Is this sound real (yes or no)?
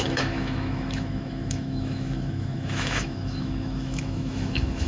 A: no